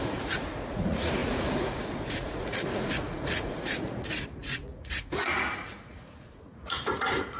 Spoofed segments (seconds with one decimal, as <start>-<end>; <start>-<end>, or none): 0.0-7.4